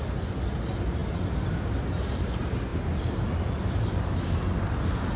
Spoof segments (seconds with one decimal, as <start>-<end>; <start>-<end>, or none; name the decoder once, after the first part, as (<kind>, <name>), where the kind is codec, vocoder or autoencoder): none